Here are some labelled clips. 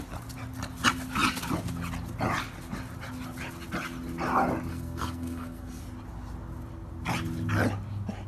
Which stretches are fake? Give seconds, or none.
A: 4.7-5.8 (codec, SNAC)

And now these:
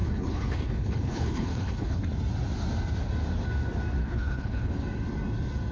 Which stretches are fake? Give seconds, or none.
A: 0.0-2.0 (codec, HILCodec); 4.0-4.7

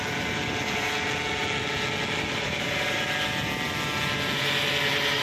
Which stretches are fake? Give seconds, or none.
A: none

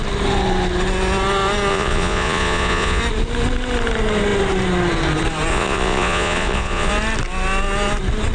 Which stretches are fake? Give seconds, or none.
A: 1.7-3.0 (vocoder, Vocos); 5.5-6.9

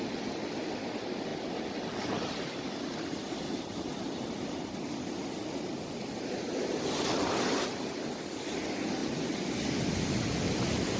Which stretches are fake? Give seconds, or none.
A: none

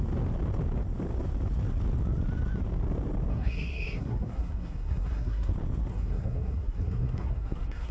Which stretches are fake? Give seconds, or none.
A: 3.3-5.5 (codec, SNAC); 5.9-7.9

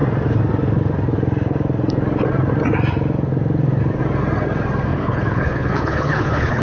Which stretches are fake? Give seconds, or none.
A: 4.9-6.6 (codec, HILCodec)